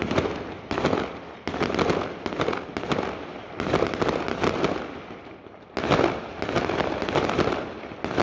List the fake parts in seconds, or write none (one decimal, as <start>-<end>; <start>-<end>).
none